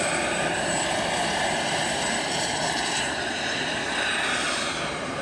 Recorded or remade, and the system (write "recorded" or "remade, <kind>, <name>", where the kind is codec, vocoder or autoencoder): remade, vocoder, BigVGAN v2